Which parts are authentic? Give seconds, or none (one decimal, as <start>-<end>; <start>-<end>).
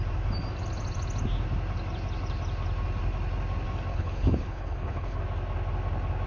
0.0-3.9; 5.2-6.3